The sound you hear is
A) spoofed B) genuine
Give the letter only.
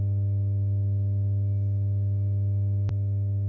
B